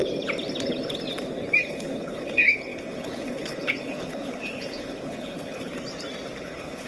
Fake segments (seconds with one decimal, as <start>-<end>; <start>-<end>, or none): 1.6-5.7; 6.4-6.9